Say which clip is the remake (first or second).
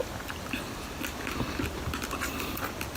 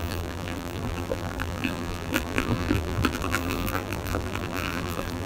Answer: second